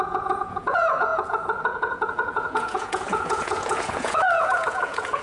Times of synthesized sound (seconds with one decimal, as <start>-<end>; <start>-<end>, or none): 0.0-5.2